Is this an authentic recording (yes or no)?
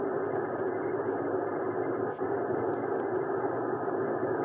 yes